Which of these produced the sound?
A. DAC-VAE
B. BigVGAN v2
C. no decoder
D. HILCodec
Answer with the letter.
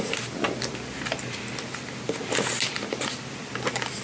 C